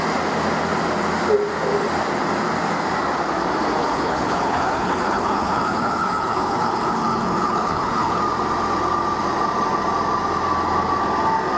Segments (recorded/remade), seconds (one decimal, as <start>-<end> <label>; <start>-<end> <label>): 0.0-3.8 recorded; 3.8-8.2 remade; 8.2-11.6 recorded